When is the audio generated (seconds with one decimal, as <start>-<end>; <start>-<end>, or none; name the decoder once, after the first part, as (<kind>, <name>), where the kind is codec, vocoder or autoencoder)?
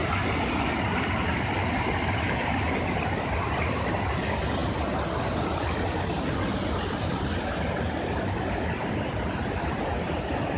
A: none